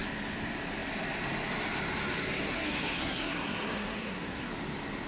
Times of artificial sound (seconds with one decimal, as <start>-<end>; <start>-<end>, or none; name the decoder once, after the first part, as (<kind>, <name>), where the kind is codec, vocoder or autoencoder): 2.4-4.5 (codec, SNAC)